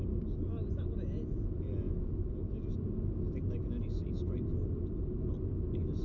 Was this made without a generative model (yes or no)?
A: yes